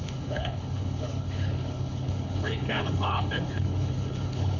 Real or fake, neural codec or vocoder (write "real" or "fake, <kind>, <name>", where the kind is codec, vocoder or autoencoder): fake, codec, HILCodec